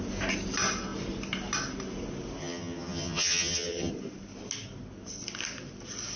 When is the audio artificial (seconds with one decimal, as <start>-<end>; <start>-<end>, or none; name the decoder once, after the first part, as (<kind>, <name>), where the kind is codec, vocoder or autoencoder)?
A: 2.4-3.9 (vocoder, HiFi-GAN)